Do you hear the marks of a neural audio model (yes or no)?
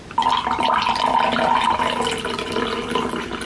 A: no